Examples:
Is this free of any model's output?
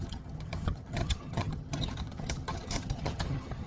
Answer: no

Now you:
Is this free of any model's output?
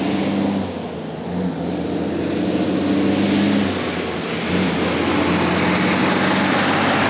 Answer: yes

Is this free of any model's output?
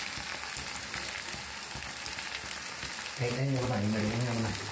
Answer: yes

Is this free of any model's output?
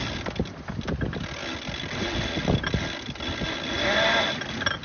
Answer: yes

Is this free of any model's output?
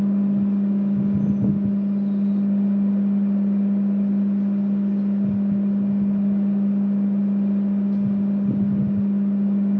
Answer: yes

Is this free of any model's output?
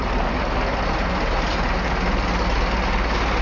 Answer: yes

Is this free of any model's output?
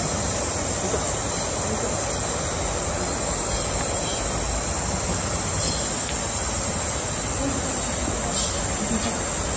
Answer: yes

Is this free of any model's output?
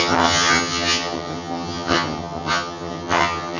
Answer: no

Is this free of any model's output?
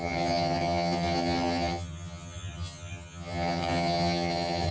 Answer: no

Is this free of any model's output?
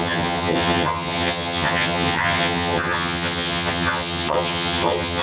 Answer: no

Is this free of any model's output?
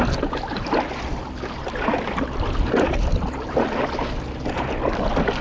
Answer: yes